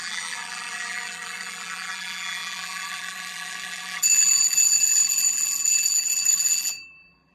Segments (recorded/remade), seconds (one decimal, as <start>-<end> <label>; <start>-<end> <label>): 0.0-7.3 remade